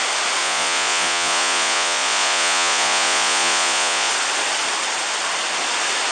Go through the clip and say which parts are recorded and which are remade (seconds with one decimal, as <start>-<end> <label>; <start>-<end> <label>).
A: 0.0-0.4 recorded; 0.4-4.1 remade; 4.1-6.1 recorded